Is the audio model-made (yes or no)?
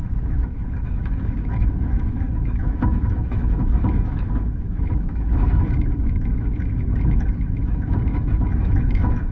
yes